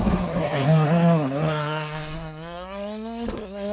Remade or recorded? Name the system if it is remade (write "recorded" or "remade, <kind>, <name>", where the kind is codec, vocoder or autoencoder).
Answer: remade, codec, SNAC